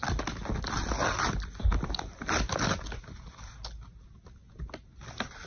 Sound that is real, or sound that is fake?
real